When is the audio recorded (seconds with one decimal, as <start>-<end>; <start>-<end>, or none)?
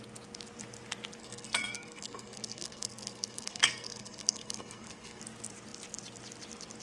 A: 0.0-1.2; 5.2-6.8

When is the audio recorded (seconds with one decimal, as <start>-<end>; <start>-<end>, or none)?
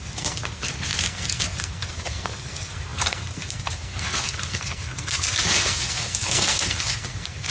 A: none